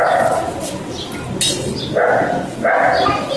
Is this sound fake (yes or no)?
no